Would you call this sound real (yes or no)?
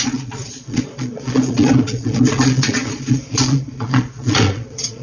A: no